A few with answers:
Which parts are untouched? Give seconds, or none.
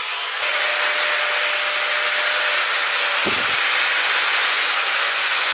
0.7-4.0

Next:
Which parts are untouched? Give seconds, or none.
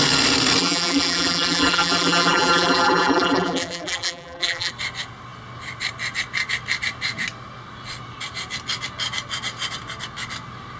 0.0-0.6; 4.7-10.8